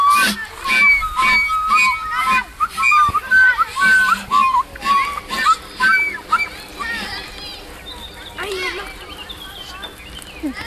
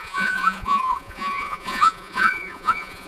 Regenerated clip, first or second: second